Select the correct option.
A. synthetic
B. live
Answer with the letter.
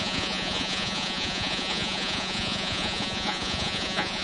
A